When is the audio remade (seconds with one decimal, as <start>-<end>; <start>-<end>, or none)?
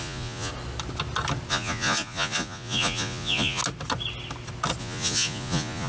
0.0-0.5; 1.5-3.6; 4.8-5.9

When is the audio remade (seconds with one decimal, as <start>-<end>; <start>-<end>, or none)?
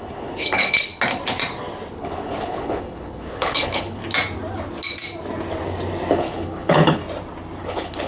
0.0-0.9; 2.0-4.0; 6.1-7.0; 7.6-8.1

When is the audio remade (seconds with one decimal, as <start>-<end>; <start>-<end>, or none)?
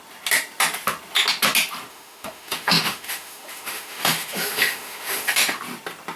1.9-5.6